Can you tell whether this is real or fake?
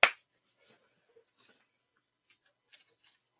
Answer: real